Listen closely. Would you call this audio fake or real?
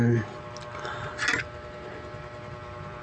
real